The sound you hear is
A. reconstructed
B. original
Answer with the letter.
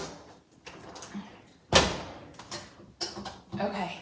B